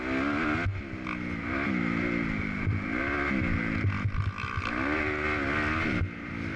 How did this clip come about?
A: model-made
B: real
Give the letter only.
B